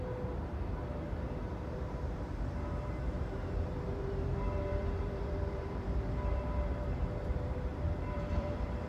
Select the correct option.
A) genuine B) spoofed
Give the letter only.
B